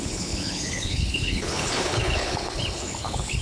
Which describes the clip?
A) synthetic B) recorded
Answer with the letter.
A